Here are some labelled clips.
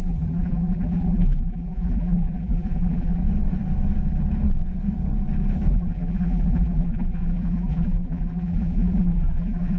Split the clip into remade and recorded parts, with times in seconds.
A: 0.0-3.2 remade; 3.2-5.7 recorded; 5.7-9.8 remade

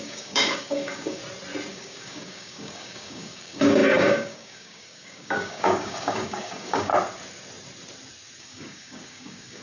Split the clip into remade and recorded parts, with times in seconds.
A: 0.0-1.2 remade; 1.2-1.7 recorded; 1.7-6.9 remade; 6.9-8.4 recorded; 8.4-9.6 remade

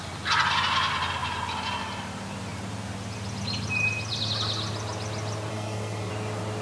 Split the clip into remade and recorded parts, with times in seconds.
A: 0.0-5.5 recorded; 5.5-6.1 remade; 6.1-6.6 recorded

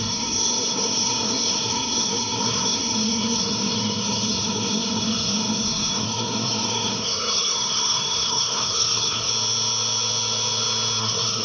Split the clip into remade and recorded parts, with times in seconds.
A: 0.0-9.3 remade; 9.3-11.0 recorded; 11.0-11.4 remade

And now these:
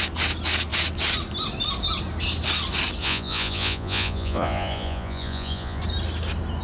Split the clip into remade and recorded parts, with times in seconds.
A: 0.0-3.0 recorded; 3.0-5.8 remade; 5.8-6.6 recorded

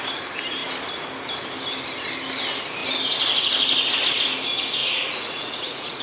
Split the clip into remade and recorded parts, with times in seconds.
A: 0.0-4.8 recorded; 4.8-6.0 remade

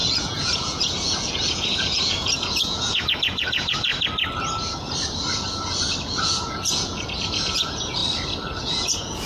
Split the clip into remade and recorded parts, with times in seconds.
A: 0.0-3.9 remade; 3.9-6.2 recorded; 6.2-8.0 remade; 8.0-8.6 recorded; 8.6-9.3 remade